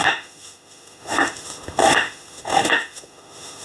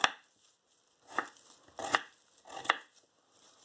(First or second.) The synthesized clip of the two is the first